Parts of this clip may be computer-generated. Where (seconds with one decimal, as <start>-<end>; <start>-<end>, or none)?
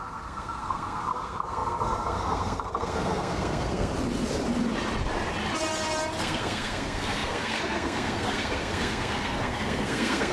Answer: 0.0-3.9; 6.2-10.3